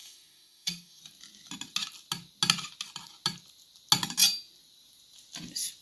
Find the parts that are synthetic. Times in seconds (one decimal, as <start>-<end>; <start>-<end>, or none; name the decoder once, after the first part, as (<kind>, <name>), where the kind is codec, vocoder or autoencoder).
0.0-1.0 (autoencoder, DAC-VAE)